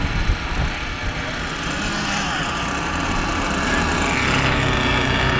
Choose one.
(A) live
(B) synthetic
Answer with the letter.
A